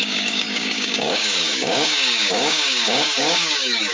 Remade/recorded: remade